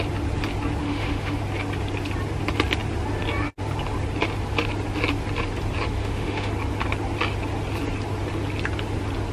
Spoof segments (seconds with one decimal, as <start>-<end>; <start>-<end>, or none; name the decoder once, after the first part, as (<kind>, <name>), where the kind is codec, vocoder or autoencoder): 0.8-1.4 (autoencoder, DAC-VAE); 6.0-6.5